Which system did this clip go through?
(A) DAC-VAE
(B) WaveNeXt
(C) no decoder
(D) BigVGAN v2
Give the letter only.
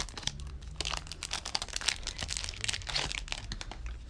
C